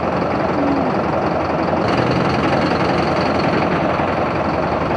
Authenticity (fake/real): real